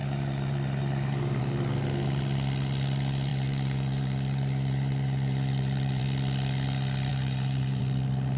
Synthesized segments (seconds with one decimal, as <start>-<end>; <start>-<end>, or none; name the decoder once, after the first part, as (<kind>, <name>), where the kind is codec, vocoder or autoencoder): 0.0-1.4 (vocoder, BigVGAN v2); 3.3-6.0; 7.1-7.8